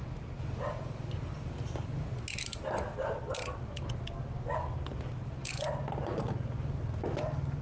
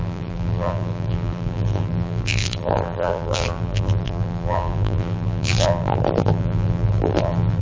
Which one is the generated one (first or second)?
second